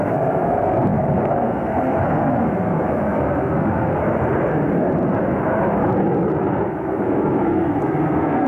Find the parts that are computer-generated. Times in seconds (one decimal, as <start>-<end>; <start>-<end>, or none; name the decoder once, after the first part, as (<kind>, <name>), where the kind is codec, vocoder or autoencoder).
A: 0.0-4.0 (codec, SNAC); 6.7-8.5